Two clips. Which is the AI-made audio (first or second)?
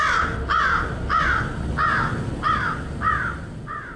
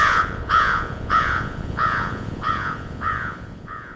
second